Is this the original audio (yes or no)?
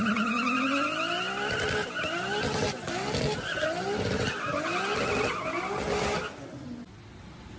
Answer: yes